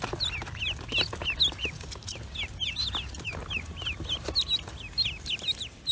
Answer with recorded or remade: recorded